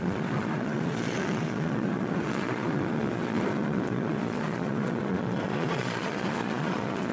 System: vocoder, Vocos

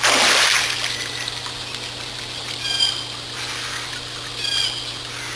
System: none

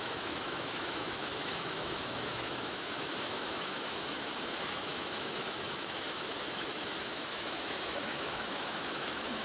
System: autoencoder, DAC-VAE